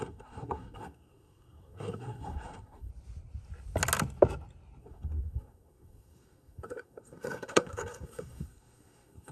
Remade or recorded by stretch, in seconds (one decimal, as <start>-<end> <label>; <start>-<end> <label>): 0.0-2.9 remade; 2.9-4.8 recorded; 4.8-9.3 remade